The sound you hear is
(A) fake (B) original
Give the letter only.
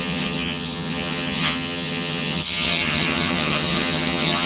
A